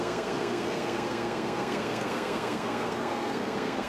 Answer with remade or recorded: remade